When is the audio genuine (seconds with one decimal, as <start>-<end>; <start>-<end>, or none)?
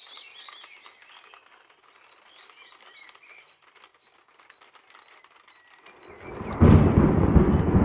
0.0-7.8